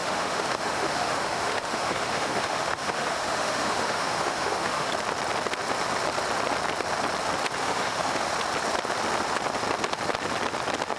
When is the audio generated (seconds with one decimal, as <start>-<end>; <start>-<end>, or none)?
0.0-4.9; 7.6-8.3